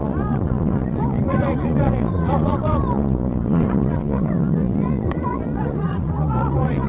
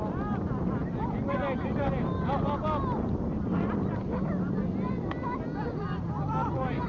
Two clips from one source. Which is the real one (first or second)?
second